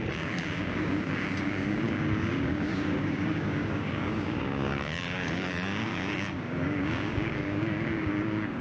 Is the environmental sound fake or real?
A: fake